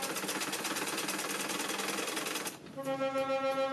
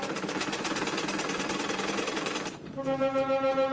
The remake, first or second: second